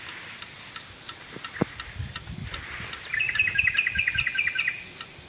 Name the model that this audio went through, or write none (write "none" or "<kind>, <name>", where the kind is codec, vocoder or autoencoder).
none